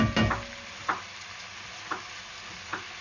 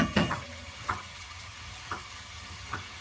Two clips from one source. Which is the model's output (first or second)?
second